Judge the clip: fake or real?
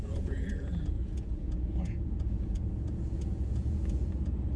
fake